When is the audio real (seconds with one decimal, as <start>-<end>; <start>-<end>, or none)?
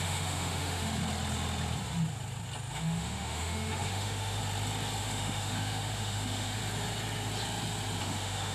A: 1.0-2.7; 4.4-5.0; 6.6-8.0